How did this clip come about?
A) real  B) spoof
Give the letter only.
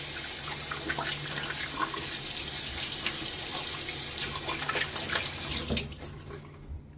A